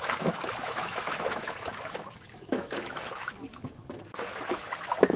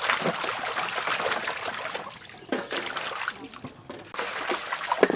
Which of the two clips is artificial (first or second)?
first